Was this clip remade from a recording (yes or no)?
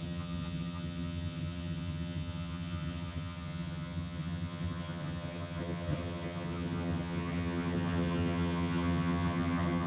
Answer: yes